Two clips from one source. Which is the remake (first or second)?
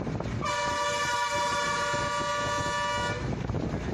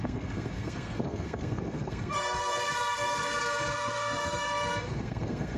second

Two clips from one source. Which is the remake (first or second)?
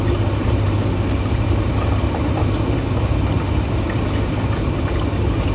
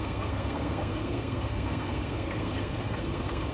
second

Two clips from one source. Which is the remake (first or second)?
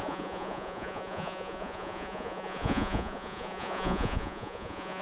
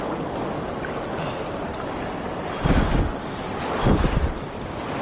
first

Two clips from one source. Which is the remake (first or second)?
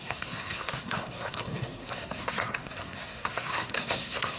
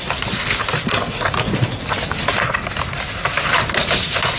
first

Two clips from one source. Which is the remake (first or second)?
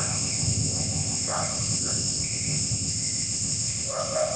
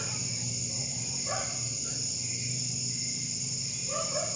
first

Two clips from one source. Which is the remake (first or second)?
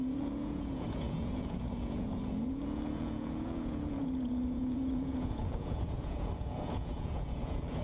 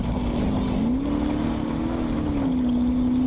first